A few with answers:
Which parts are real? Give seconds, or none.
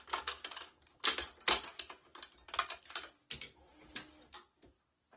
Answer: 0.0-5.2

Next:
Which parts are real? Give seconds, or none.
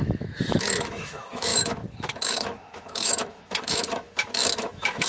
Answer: none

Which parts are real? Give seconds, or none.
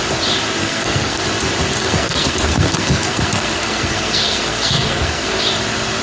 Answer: 0.0-0.6; 1.2-1.8; 5.4-6.0